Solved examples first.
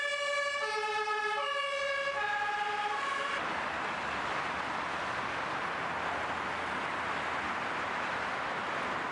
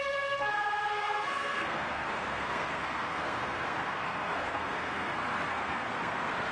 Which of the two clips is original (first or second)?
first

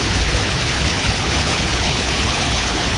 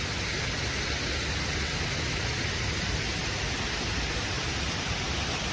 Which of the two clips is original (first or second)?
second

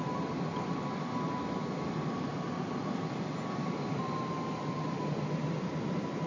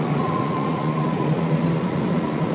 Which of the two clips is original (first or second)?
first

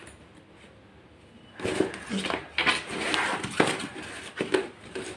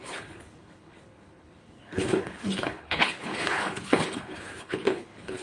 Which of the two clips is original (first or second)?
first